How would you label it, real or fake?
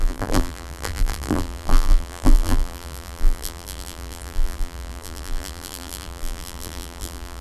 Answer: fake